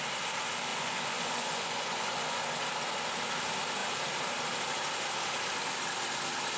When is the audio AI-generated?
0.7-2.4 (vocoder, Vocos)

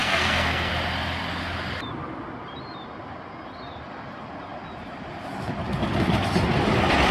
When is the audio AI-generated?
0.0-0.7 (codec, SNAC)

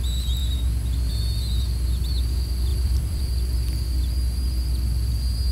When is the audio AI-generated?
2.7-3.3 (vocoder, BigVGAN v2)

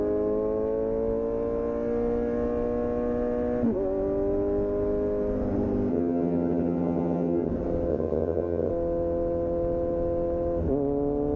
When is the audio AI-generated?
5.9-7.5 (vocoder, HiFi-GAN); 7.9-8.7

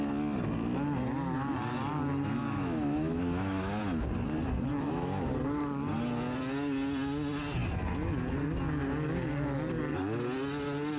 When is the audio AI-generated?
2.4-3.8 (autoencoder, DAC-VAE); 4.7-5.3

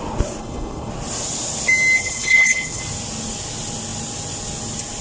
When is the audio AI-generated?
0.4-0.9 (codec, HILCodec); 2.0-2.8

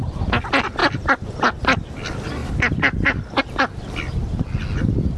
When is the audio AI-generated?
none